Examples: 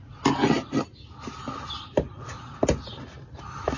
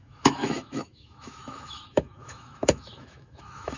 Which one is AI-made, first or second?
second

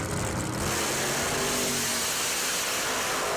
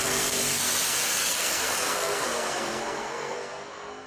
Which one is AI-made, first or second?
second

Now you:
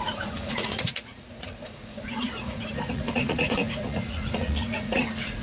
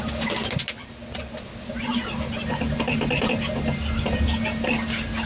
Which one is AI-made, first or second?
first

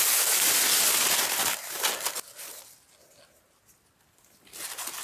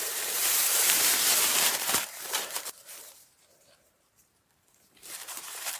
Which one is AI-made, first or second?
second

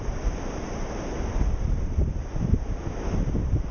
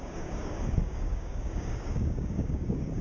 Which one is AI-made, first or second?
second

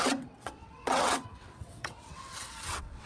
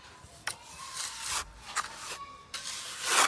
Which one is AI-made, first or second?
first